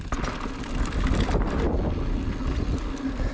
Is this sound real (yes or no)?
yes